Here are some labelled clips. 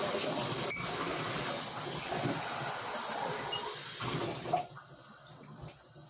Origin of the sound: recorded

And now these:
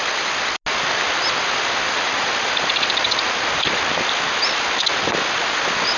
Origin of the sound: recorded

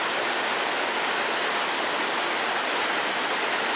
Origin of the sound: recorded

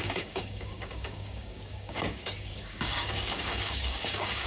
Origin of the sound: remade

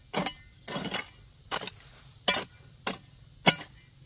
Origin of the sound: recorded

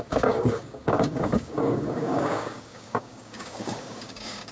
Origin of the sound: remade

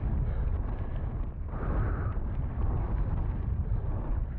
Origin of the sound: recorded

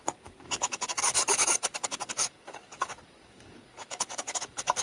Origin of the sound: remade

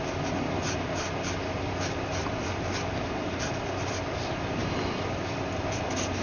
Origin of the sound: recorded